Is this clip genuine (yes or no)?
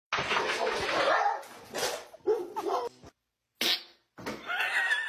yes